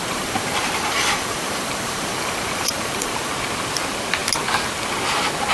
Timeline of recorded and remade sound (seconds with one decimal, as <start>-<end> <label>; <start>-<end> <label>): 0.0-3.3 remade; 3.3-5.5 recorded